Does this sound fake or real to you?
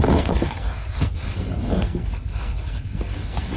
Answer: fake